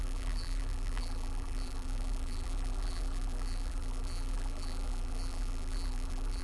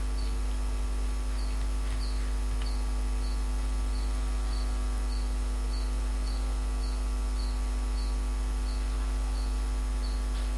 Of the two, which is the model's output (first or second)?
first